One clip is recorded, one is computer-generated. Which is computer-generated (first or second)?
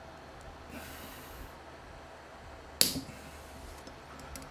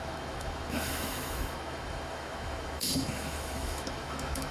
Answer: second